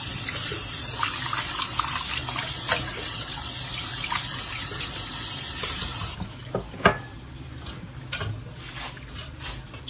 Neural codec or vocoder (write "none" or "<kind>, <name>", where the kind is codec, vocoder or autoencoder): none